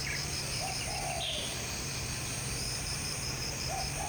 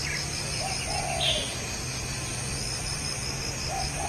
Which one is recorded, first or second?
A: second